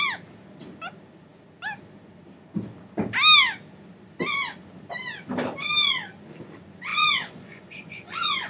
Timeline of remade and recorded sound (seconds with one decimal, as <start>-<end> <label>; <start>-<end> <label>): 0.0-6.9 recorded; 6.9-8.5 remade

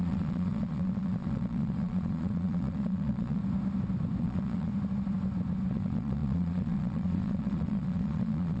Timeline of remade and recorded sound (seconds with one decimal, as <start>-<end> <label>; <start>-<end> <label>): 0.0-3.4 remade; 3.4-4.2 recorded; 4.2-4.7 remade; 4.7-5.7 recorded; 5.7-8.6 remade

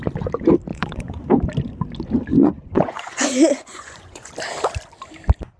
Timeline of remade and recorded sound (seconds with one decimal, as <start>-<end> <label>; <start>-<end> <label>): 0.0-0.7 recorded; 0.7-1.3 remade; 1.3-2.3 recorded; 2.3-4.3 remade; 4.3-5.6 recorded

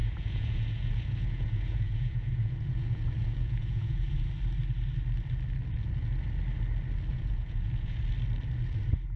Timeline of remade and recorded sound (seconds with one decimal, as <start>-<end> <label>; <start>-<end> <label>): 0.0-4.3 remade; 4.3-7.1 recorded; 7.1-8.0 remade; 8.0-9.2 recorded

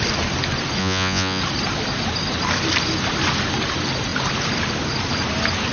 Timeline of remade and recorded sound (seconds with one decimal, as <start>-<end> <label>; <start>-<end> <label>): 0.0-0.8 recorded; 0.8-1.4 remade; 1.4-5.7 recorded